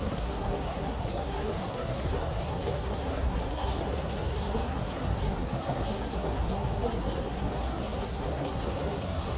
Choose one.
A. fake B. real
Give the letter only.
A